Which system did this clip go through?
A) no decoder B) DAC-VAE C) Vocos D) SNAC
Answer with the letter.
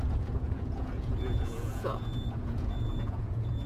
C